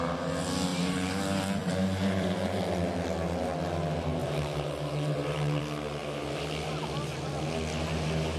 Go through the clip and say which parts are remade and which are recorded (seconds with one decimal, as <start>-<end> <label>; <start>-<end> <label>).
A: 0.0-0.7 recorded; 0.7-1.2 remade; 1.2-1.6 recorded; 1.6-2.6 remade; 2.6-4.2 recorded; 4.2-5.6 remade; 5.6-8.4 recorded